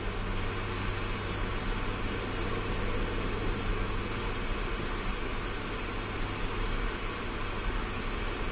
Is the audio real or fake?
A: real